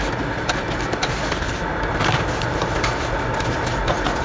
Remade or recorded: recorded